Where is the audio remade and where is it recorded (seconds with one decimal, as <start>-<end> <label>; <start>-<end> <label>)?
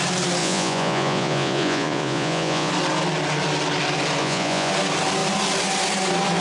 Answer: 0.0-0.4 recorded; 0.4-2.7 remade; 2.7-4.2 recorded; 4.2-4.7 remade; 4.7-6.4 recorded